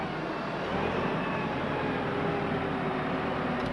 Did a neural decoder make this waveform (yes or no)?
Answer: no